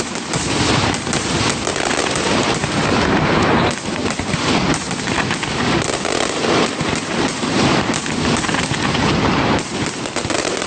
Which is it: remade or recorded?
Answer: remade